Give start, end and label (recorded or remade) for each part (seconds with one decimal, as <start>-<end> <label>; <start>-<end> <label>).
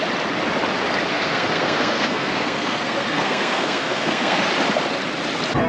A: 0.0-1.1 recorded; 1.1-4.5 remade; 4.5-5.7 recorded